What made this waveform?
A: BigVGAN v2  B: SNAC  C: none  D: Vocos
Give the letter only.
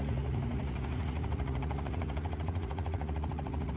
D